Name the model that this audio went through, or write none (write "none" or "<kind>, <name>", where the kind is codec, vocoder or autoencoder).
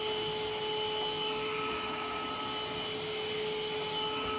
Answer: none